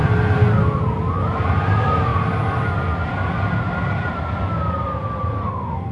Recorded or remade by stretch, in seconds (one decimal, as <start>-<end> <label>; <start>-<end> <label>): 0.0-5.4 recorded; 5.4-5.9 remade